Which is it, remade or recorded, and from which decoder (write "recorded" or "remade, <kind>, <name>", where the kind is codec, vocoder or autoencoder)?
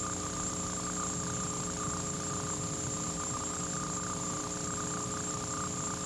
recorded